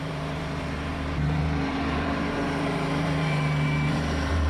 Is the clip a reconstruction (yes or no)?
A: yes